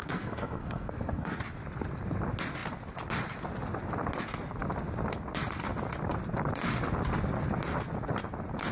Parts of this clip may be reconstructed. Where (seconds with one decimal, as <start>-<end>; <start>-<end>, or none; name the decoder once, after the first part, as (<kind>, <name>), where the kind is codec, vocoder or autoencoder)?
0.0-1.4 (codec, SNAC)